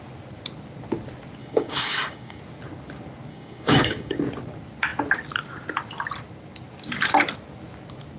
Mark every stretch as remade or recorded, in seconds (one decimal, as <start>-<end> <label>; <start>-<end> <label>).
0.0-1.4 recorded; 1.4-2.4 remade; 2.4-3.3 recorded; 3.3-4.2 remade; 4.2-8.2 recorded